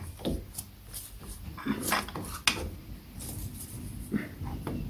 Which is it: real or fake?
real